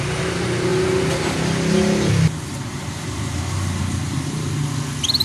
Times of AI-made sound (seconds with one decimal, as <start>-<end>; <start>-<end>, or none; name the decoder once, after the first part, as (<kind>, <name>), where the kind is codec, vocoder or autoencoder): none